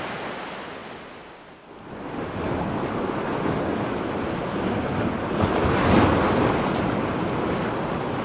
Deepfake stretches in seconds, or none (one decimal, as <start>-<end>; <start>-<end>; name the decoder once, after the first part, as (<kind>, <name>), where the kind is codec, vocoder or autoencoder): none